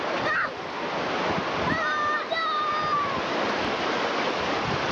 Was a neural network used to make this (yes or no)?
no